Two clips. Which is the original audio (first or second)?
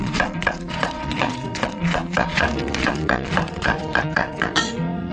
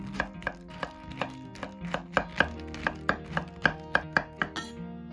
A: second